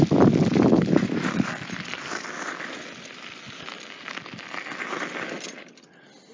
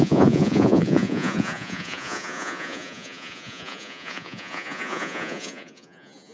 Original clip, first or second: first